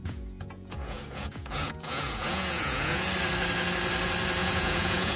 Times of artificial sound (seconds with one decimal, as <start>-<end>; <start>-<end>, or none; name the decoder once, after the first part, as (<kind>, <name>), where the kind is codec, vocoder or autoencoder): 0.0-3.1 (vocoder, Vocos); 4.4-5.2